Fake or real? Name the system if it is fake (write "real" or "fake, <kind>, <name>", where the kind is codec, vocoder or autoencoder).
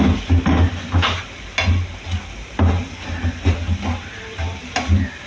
real